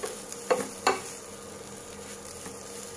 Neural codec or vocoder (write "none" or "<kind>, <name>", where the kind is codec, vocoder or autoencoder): none